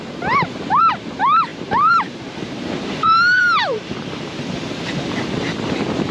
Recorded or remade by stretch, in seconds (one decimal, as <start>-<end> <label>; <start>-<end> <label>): 0.0-6.1 remade